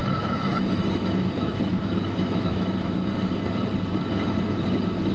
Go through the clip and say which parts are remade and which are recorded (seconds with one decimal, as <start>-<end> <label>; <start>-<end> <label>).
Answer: 0.0-3.1 remade; 3.1-5.1 recorded